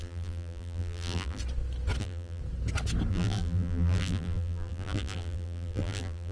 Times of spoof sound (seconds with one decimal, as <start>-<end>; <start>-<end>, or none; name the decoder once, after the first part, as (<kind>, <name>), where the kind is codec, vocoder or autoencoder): 0.0-1.4 (vocoder, BigVGAN v2); 2.0-2.4; 3.1-6.3